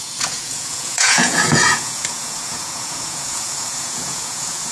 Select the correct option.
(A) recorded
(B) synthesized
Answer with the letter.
B